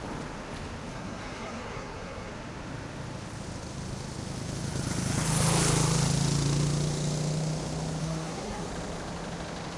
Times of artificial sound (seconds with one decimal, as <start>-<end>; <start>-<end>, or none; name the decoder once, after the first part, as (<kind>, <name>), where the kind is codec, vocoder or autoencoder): 0.9-2.3 (codec, SNAC); 8.0-8.7